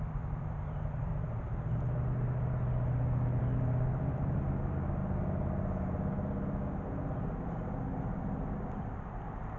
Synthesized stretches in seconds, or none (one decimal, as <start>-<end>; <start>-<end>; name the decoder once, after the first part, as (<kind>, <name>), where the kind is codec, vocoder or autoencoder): 0.0-1.1 (vocoder, BigVGAN v2); 3.4-5.0; 8.2-9.6